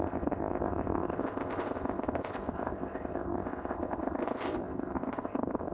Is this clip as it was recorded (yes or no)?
no